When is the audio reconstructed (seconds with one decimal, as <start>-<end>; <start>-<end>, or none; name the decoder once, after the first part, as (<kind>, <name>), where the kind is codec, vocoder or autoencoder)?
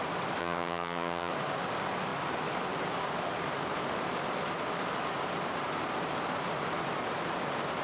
0.4-1.3 (vocoder, HiFi-GAN)